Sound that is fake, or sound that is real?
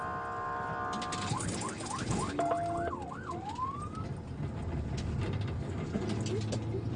real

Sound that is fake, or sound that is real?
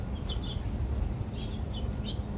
real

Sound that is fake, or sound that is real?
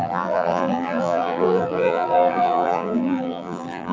fake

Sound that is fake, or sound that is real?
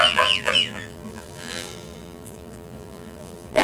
fake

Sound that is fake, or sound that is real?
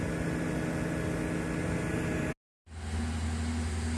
real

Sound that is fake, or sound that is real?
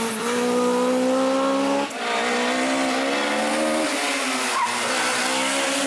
real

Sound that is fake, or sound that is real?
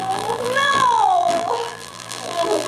fake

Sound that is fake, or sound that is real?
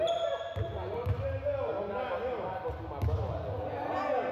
real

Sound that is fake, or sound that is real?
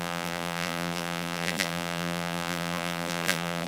fake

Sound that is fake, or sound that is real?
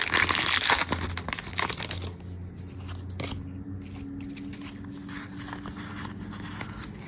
real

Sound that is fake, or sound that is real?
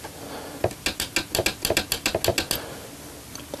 real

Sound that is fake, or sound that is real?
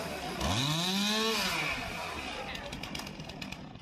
real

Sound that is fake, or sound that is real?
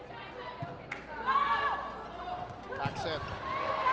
real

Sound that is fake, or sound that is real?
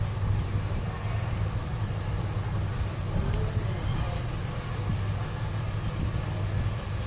real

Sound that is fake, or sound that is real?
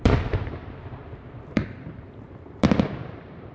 fake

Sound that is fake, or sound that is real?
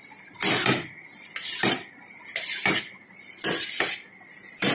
fake